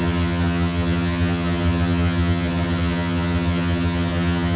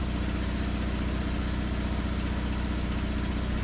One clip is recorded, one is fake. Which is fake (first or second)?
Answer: first